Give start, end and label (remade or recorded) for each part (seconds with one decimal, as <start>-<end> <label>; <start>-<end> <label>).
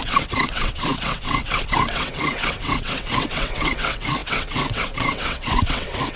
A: 0.0-6.2 remade